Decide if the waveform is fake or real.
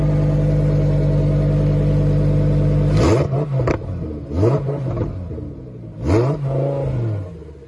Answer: real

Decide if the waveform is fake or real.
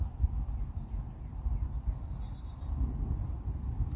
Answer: real